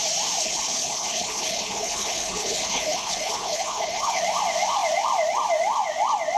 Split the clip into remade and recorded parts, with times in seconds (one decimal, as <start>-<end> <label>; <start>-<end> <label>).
0.0-0.4 recorded; 0.4-4.2 remade; 4.2-6.4 recorded